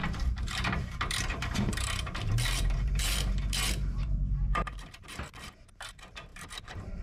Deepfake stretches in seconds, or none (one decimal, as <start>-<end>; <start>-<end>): 0.0-7.0